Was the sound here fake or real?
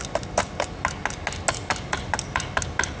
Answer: real